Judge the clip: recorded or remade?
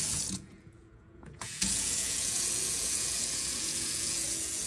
remade